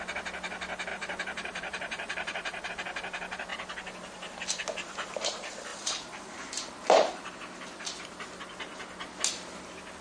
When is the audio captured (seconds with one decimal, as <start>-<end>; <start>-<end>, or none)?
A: 0.0-0.9; 2.7-5.7; 7.3-10.0